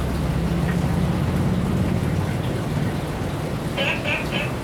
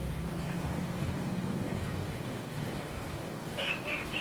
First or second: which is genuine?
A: first